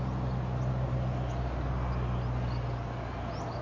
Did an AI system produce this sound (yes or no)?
no